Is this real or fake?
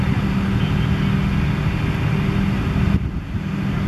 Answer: real